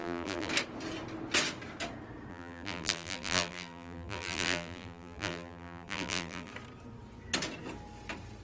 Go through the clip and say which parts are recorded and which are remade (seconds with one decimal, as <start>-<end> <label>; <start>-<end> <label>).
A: 0.0-0.5 remade; 0.5-2.3 recorded; 2.3-6.5 remade; 6.5-8.4 recorded